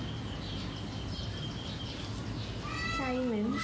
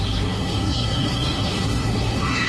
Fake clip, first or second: second